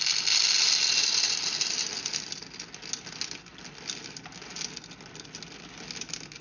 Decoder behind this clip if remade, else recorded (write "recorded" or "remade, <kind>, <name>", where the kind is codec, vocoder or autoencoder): recorded